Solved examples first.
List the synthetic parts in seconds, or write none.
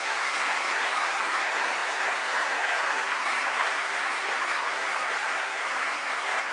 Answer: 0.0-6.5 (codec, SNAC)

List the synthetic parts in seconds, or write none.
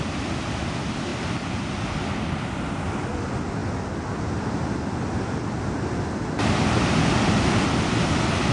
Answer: none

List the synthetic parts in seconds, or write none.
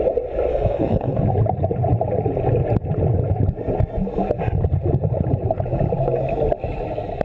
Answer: 0.5-1.2 (codec, SNAC)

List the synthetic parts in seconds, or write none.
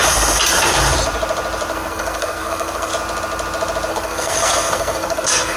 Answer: 1.7-2.9 (codec, SNAC); 3.9-5.6